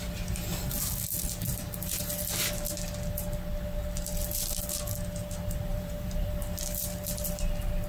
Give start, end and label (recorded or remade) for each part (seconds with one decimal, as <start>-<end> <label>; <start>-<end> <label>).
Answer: 0.0-5.7 recorded; 5.7-6.4 remade; 6.4-7.9 recorded